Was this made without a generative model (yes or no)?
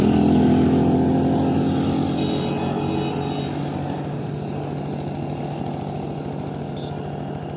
yes